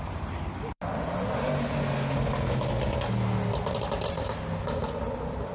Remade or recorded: recorded